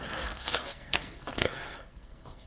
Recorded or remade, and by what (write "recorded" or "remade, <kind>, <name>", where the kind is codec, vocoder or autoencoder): remade, codec, SNAC